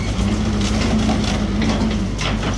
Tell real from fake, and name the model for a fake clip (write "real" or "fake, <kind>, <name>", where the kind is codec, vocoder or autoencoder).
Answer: real